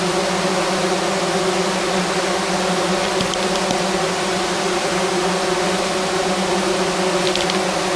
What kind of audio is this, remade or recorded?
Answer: recorded